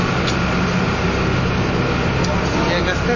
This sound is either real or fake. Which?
real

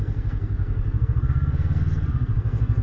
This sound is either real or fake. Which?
fake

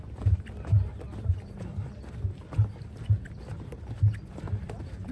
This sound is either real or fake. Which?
real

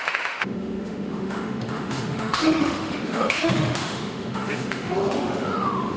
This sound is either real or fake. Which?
fake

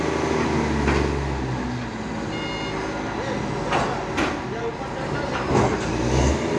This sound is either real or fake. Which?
real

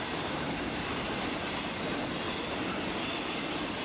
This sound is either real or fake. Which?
real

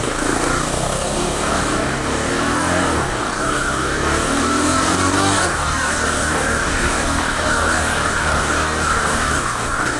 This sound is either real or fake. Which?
fake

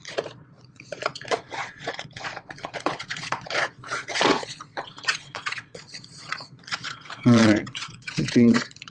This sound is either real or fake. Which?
fake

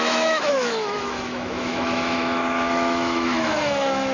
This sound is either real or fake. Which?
fake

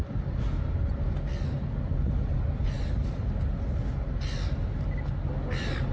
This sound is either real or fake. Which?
real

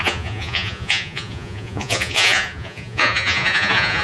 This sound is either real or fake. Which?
fake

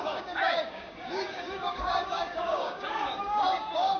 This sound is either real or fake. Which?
fake